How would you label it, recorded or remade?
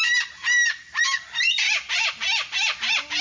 recorded